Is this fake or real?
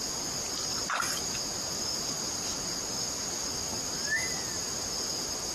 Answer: real